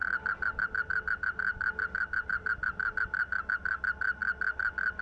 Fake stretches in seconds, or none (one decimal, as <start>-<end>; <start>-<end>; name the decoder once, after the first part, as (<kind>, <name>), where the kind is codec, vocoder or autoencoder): none